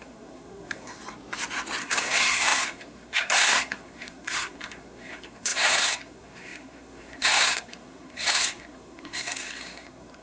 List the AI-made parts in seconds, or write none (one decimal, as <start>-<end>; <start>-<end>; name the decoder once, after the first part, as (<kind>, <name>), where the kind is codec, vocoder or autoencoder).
0.0-1.0 (codec, SNAC); 1.8-10.2